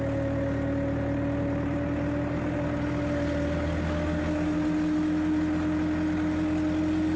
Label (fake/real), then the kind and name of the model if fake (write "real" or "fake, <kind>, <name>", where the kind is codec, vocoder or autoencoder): real